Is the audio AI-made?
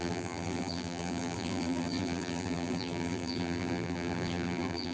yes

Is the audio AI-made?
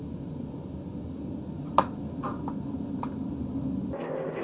no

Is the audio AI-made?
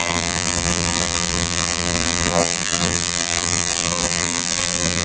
yes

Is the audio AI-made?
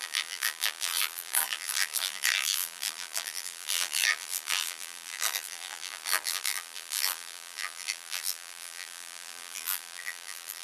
yes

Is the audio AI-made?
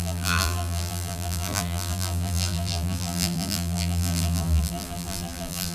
yes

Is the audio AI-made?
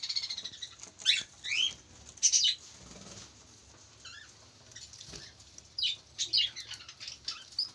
no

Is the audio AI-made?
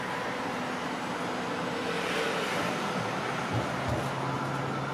no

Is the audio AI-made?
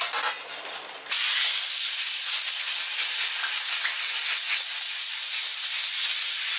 no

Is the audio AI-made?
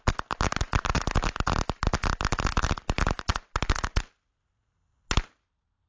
no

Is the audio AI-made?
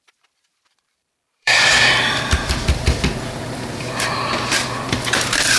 yes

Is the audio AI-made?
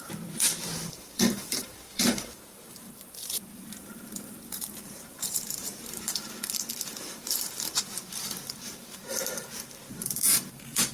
yes